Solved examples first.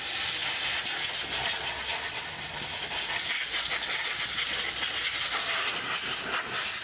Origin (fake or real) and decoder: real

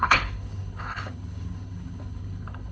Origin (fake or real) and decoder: fake, codec, HILCodec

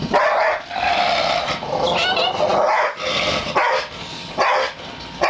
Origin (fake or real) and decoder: real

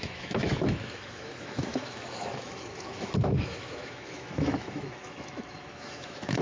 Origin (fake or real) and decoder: fake, autoencoder, DAC-VAE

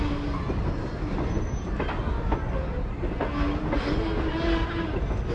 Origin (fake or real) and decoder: real